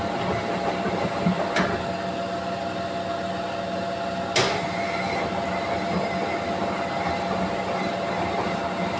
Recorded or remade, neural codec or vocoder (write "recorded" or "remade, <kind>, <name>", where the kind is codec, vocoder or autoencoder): recorded